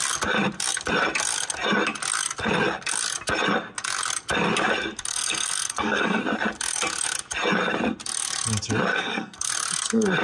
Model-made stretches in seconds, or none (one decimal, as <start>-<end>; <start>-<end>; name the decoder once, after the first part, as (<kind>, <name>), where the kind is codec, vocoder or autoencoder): 5.1-6.2 (codec, SNAC); 8.9-9.5